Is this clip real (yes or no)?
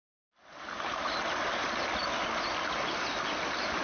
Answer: yes